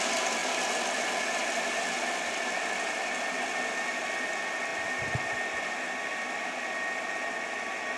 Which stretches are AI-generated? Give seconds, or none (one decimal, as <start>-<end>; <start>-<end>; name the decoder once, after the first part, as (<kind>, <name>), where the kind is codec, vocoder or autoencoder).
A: none